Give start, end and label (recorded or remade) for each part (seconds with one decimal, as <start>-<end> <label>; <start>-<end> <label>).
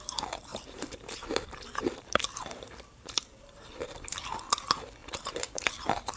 0.0-0.5 recorded; 0.5-4.2 remade; 4.2-5.0 recorded; 5.0-6.2 remade